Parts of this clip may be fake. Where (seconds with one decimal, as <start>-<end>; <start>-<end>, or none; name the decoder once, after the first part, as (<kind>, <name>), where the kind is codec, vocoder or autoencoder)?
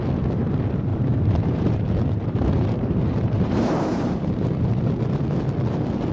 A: 0.9-4.6 (vocoder, BigVGAN v2)